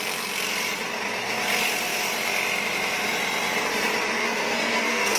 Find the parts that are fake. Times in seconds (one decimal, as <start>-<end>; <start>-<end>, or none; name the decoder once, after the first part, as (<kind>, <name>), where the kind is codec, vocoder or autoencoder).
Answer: 4.2-5.2 (codec, SNAC)